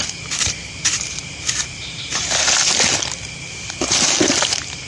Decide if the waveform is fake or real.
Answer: fake